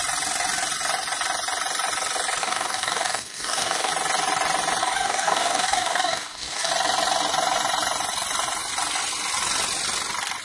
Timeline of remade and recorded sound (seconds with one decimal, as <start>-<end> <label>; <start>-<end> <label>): 0.0-2.4 recorded; 2.4-3.9 remade; 3.9-4.8 recorded; 4.8-6.7 remade; 6.7-10.4 recorded